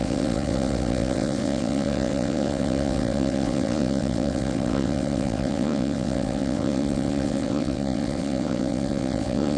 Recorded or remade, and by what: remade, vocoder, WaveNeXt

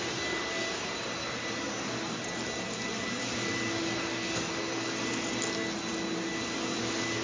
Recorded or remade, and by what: recorded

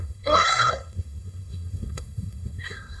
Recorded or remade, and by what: remade, codec, SNAC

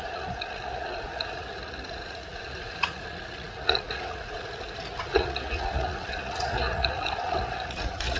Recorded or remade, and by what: remade, vocoder, Vocos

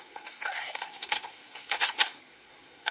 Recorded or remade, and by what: remade, codec, SNAC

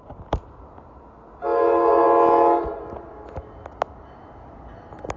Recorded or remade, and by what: recorded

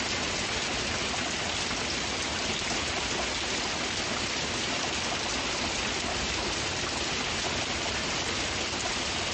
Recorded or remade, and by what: recorded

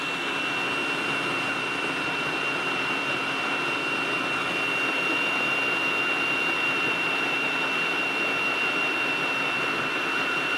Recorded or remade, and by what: recorded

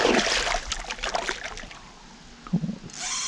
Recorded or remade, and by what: recorded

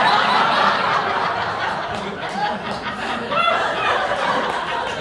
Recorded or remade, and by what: remade, vocoder, BigVGAN v2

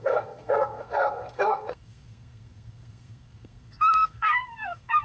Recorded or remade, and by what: remade, codec, SNAC